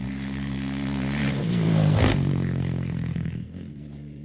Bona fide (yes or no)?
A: no